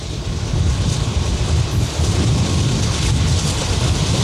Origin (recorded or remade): recorded